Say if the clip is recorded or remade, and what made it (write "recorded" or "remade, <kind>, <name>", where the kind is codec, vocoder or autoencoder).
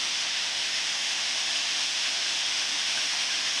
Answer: remade, autoencoder, DAC-VAE